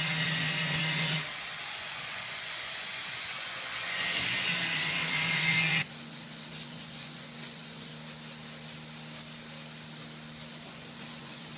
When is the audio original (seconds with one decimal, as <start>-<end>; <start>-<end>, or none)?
7.9-10.5